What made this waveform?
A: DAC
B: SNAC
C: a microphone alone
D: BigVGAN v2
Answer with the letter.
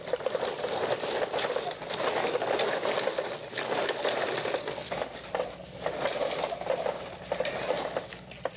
C